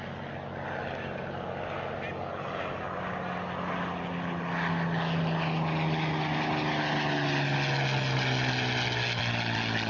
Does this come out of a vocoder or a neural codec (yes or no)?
no